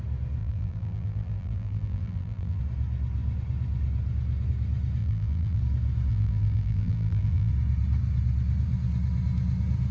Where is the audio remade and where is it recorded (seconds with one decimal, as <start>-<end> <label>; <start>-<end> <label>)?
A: 0.0-0.4 recorded; 0.4-2.6 remade; 2.6-5.0 recorded; 5.0-5.6 remade; 5.6-6.1 recorded; 6.1-7.5 remade; 7.5-9.9 recorded